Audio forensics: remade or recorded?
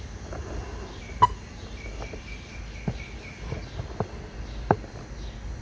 recorded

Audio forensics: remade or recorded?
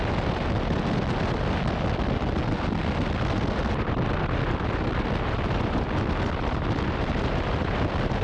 recorded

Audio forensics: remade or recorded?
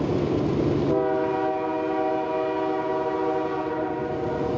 recorded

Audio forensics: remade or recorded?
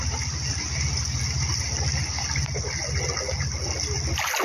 recorded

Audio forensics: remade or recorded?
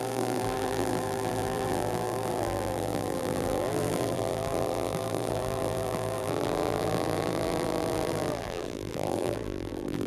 remade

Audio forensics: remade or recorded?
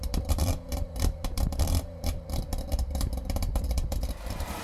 remade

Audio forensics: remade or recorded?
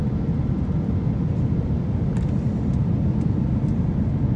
recorded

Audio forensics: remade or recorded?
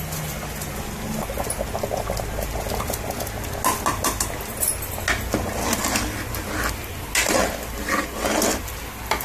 recorded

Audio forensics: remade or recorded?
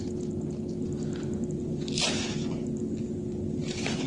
recorded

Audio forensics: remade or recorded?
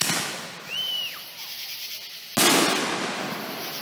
recorded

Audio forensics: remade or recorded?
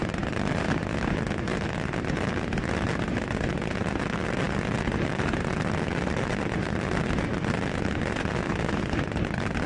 recorded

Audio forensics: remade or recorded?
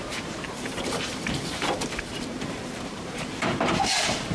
remade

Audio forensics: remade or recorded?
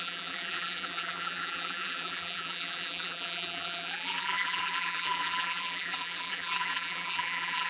remade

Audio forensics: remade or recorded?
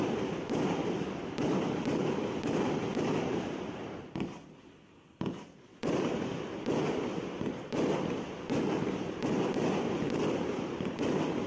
remade